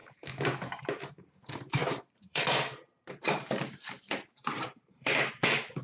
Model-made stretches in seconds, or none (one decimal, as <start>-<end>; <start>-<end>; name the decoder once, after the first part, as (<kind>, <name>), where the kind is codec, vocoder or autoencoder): 1.8-5.3 (vocoder, BigVGAN v2)